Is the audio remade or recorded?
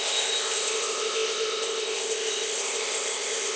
remade